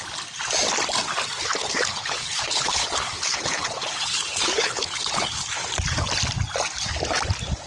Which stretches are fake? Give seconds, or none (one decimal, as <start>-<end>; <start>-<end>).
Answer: 1.6-5.7